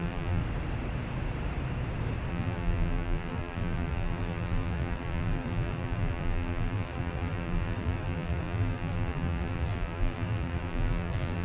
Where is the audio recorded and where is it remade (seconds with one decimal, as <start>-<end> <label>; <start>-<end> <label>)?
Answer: 0.0-0.4 remade; 0.4-2.3 recorded; 2.3-11.4 remade